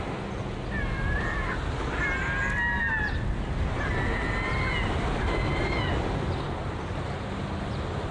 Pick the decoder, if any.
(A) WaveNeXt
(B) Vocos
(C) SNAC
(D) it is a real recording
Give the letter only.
D